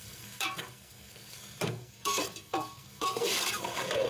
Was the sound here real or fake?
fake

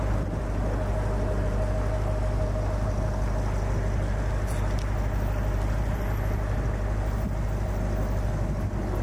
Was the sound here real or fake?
real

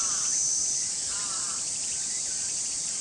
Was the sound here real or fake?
fake